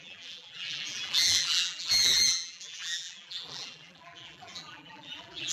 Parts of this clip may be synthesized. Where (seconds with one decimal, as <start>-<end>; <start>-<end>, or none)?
0.0-5.5